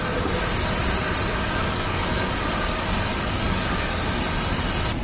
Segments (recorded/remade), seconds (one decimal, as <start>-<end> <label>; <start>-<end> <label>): 0.0-1.3 recorded; 1.3-4.0 remade; 4.0-5.0 recorded